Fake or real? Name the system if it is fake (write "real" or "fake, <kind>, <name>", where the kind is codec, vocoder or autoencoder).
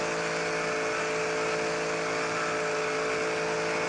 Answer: real